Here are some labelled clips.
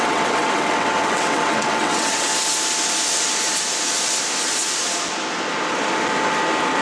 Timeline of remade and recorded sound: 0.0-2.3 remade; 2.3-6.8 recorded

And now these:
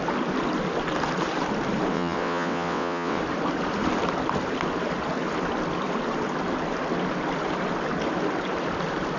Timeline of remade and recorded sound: 0.0-1.9 recorded; 1.9-3.2 remade; 3.2-9.2 recorded

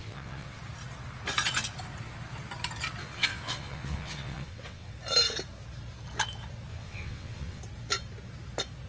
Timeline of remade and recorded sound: 0.0-0.6 remade; 0.6-3.0 recorded; 3.0-4.9 remade; 4.9-6.7 recorded; 6.7-7.6 remade; 7.6-8.9 recorded

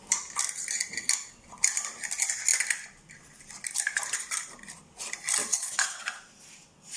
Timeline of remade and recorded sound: 0.0-5.4 recorded; 5.4-6.0 remade; 6.0-7.0 recorded

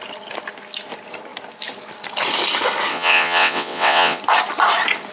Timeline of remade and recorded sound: 0.0-2.9 recorded; 2.9-4.2 remade; 4.2-5.1 recorded

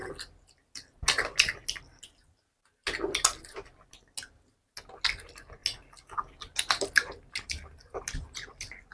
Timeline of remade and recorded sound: 0.0-8.9 recorded